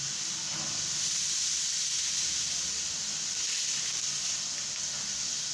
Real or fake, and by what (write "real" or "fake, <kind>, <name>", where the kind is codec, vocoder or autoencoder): real